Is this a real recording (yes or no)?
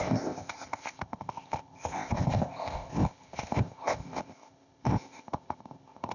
no